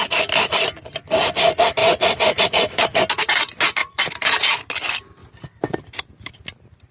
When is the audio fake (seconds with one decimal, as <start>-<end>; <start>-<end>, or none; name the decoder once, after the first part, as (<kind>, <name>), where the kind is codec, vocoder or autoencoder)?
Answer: 3.8-4.6 (vocoder, Vocos)